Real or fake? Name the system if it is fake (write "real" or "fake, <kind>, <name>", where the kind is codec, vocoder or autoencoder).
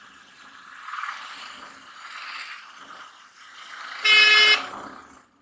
real